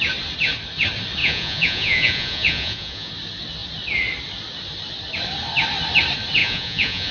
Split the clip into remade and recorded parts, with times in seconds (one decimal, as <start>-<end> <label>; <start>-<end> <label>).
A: 0.0-1.2 recorded; 1.2-3.1 remade; 3.1-6.4 recorded; 6.4-7.1 remade